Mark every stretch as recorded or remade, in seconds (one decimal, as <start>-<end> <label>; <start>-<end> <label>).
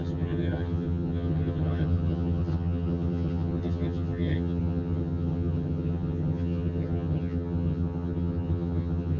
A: 0.0-9.2 remade